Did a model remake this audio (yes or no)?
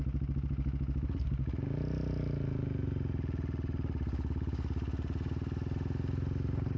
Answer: no